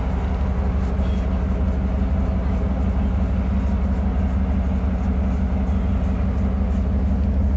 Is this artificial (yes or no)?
no